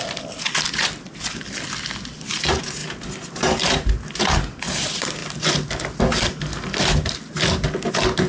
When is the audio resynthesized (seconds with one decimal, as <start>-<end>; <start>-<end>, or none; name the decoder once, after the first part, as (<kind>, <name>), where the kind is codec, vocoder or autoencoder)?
none